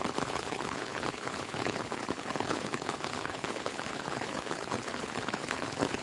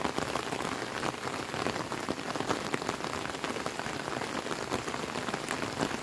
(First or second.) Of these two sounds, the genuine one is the second